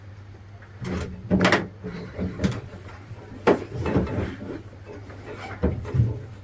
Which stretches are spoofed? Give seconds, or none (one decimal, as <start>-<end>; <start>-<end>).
1.9-4.7

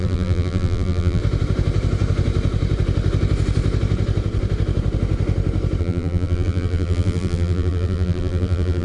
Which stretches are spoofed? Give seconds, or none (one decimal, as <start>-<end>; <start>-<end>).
0.0-1.2; 5.8-8.8